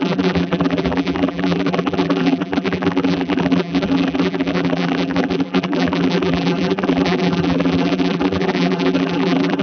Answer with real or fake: fake